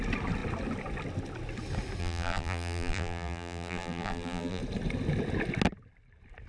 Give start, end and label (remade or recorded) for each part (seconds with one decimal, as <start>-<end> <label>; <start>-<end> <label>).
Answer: 0.0-2.0 recorded; 2.0-4.6 remade; 4.6-6.5 recorded